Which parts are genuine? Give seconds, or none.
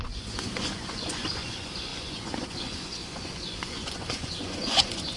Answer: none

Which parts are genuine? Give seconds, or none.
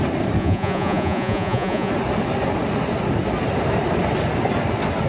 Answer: 0.0-0.4; 1.9-5.1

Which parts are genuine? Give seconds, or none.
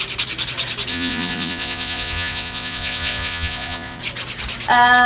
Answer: 0.0-0.9; 4.0-5.1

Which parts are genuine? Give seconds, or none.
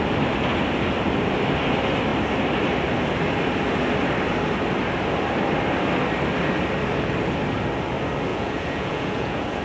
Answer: 0.0-8.3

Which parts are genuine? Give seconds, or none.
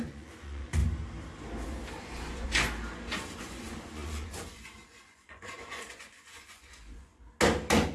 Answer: 0.8-2.0; 2.5-3.4; 7.1-7.9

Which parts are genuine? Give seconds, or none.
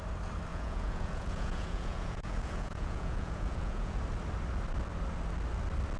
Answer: 0.0-0.5; 4.0-6.0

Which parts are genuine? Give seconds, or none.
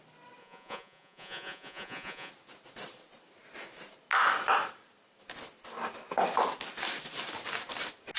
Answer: 0.0-0.4; 2.3-8.2